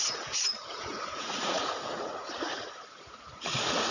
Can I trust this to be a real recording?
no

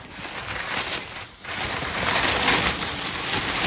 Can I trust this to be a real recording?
yes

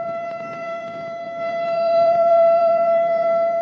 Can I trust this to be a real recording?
no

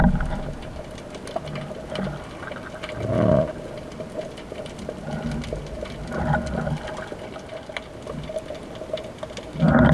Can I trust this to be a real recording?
yes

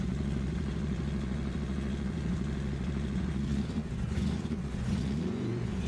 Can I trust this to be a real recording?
no